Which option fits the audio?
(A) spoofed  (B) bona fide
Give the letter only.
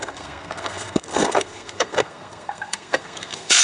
A